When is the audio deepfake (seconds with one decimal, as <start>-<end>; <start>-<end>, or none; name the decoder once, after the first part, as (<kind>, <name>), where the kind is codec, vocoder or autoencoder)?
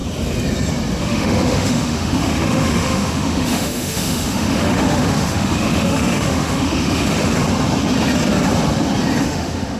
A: 1.0-7.3 (autoencoder, DAC-VAE); 9.2-9.8